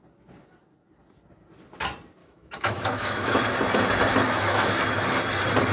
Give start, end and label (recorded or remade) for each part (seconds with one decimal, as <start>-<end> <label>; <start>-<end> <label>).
0.0-2.2 recorded; 2.2-3.4 remade; 3.4-4.1 recorded; 4.1-4.8 remade; 4.8-5.7 recorded